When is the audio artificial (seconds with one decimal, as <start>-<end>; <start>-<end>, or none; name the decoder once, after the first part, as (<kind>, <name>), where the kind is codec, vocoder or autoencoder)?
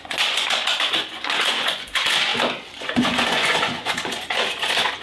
0.0-2.3 (vocoder, Vocos); 2.8-5.0